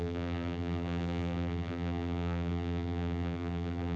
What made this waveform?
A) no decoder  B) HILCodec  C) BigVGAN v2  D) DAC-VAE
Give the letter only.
C